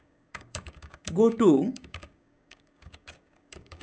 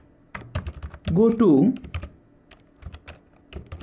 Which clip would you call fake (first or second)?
first